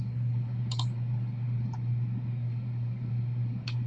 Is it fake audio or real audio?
fake